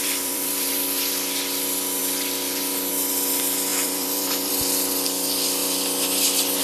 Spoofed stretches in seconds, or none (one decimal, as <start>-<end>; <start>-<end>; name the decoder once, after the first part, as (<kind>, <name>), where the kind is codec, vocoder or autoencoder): 0.0-0.7 (vocoder, BigVGAN v2); 3.7-4.5

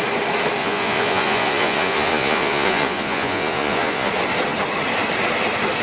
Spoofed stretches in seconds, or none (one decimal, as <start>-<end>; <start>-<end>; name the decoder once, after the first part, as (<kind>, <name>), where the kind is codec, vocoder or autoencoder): 0.6-4.1 (vocoder, Vocos)

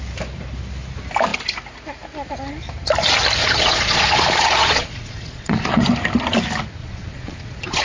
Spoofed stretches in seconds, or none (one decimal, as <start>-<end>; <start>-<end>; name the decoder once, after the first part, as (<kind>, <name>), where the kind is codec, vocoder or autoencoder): 3.4-5.8 (vocoder, Vocos); 6.8-7.8

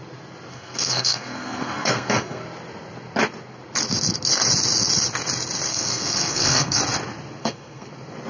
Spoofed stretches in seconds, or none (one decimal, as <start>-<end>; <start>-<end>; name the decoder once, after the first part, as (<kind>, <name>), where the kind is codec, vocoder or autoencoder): 0.5-2.4 (codec, SNAC); 5.7-6.8; 7.4-7.9